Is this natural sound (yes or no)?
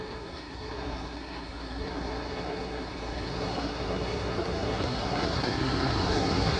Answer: no